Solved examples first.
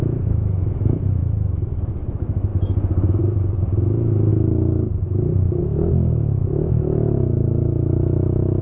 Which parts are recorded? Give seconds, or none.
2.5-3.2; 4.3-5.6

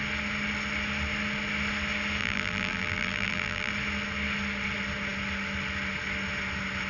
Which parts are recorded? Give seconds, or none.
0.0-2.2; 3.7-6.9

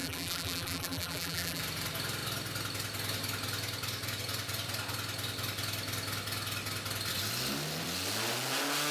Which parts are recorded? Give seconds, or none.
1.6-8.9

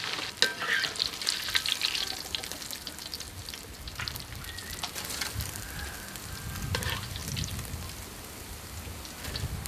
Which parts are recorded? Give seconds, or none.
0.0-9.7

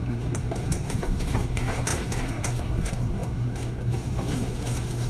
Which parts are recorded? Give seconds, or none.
none

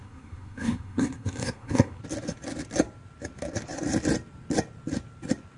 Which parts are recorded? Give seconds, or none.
2.0-5.6

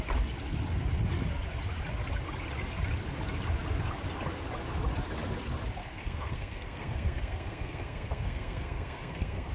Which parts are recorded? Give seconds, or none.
0.0-5.8